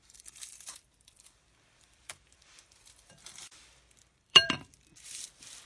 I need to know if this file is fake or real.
fake